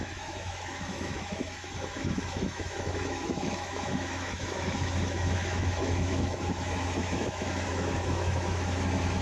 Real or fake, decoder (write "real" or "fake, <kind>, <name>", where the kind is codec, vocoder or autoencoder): fake, autoencoder, DAC-VAE